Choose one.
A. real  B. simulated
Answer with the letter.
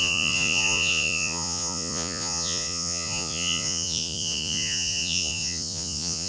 B